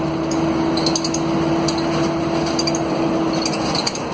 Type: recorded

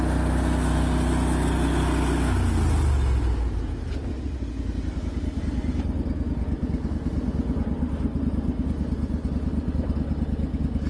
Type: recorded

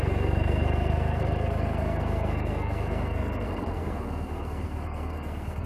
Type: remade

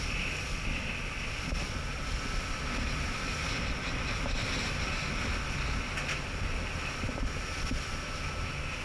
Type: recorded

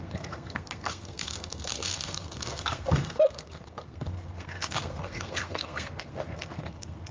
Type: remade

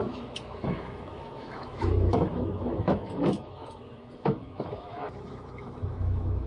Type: remade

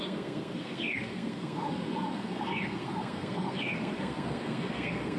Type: remade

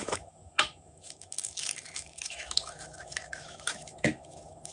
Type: remade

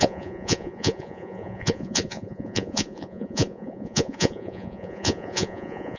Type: remade